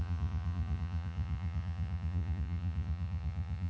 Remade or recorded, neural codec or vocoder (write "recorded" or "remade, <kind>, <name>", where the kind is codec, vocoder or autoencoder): remade, vocoder, Vocos